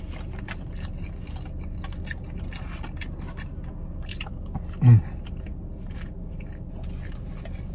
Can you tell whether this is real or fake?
real